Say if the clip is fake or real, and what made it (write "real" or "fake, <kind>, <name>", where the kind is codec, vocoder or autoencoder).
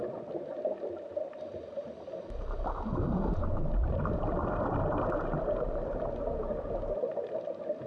real